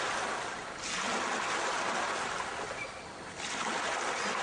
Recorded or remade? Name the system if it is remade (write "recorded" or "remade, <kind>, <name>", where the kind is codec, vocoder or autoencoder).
recorded